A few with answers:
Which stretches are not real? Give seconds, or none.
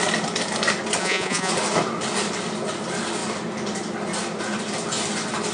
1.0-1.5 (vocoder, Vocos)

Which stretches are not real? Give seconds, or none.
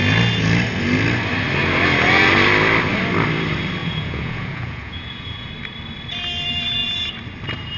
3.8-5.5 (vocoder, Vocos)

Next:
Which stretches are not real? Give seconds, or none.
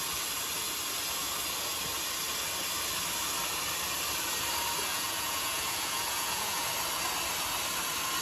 4.9-6.7 (vocoder, Vocos)